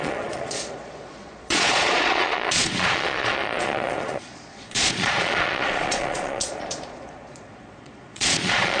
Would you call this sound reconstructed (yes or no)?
yes